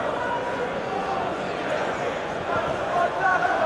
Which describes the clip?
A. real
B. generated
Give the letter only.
B